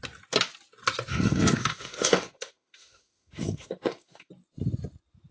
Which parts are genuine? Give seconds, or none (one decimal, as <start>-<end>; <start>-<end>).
0.0-1.1; 4.3-5.3